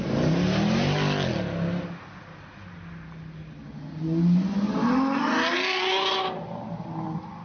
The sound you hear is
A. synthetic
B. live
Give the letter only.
B